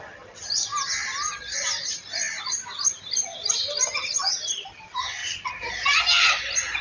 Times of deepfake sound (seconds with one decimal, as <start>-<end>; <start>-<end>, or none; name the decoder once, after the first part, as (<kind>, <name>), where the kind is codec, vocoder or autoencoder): none